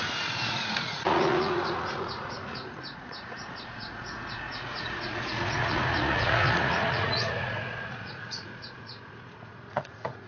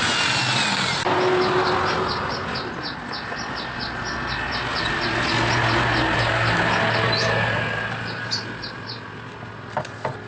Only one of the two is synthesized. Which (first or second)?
first